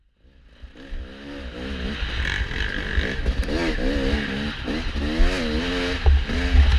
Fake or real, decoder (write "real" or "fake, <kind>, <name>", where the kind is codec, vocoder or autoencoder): real